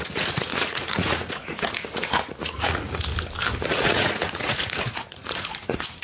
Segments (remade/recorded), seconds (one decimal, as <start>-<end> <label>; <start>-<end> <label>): 0.0-3.1 remade; 3.1-3.7 recorded; 3.7-6.0 remade